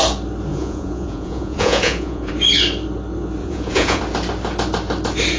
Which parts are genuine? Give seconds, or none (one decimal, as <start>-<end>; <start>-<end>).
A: 0.0-0.5; 2.3-3.4; 4.0-5.4